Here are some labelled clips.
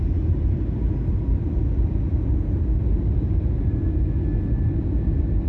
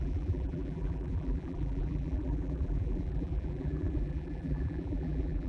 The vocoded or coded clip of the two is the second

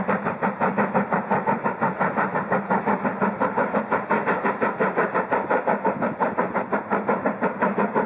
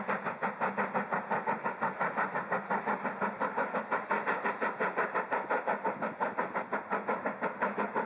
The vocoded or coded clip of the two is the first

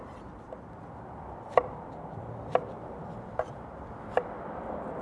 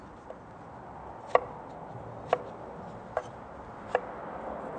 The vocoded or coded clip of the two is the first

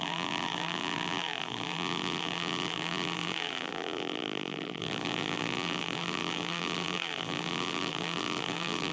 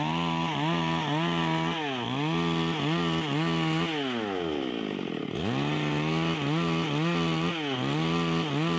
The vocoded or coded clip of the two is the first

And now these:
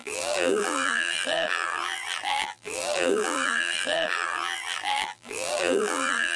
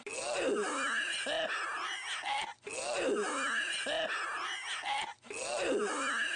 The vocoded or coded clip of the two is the first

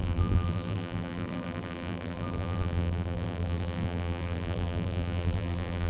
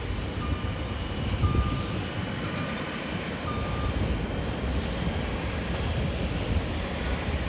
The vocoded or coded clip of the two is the first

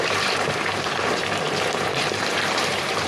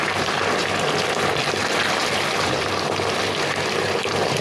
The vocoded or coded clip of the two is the first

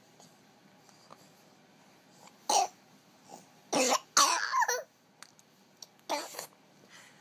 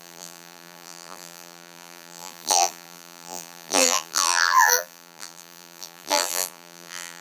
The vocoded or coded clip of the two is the second